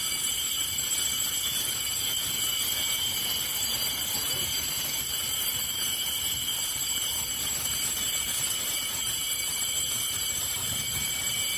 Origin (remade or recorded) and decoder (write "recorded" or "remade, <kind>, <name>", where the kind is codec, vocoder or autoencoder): remade, vocoder, BigVGAN v2